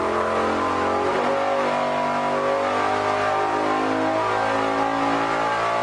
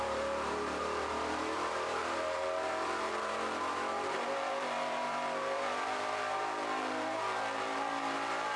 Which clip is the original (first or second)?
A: first